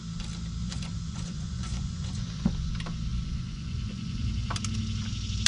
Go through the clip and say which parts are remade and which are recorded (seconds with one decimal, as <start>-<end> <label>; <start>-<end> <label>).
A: 0.0-0.6 recorded; 0.6-2.7 remade; 2.7-3.1 recorded; 3.1-4.5 remade; 4.5-5.5 recorded